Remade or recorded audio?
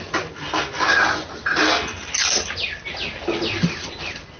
recorded